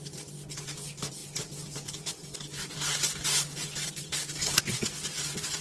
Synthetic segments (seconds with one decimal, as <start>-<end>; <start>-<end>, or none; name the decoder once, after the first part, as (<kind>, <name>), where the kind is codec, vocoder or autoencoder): none